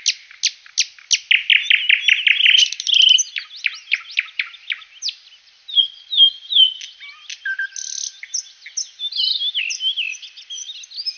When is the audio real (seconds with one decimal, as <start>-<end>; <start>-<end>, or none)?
0.0-11.2